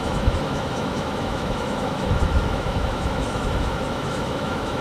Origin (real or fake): fake